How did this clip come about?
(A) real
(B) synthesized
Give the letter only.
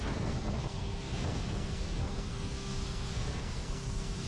B